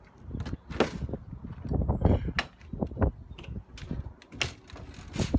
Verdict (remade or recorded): recorded